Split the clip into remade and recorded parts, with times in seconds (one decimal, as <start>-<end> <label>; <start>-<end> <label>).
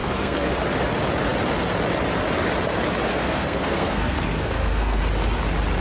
0.0-0.5 remade; 0.5-3.1 recorded; 3.1-5.0 remade; 5.0-5.8 recorded